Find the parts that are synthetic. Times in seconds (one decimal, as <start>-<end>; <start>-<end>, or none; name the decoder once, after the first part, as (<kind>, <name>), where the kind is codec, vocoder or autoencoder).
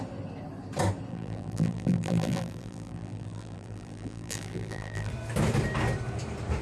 1.1-5.1 (vocoder, BigVGAN v2)